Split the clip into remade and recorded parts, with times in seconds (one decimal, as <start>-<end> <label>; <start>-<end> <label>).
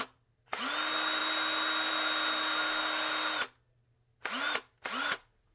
0.0-5.5 recorded